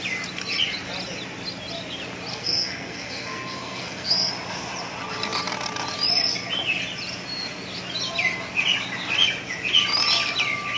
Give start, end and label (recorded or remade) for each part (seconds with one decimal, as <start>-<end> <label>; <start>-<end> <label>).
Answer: 0.0-2.3 recorded; 2.3-4.3 remade; 4.3-10.8 recorded